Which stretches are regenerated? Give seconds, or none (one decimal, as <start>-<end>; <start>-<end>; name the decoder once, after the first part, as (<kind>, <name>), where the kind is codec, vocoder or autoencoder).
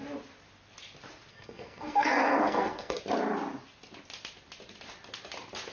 1.3-3.0 (codec, SNAC)